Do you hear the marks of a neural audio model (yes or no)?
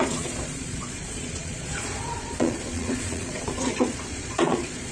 yes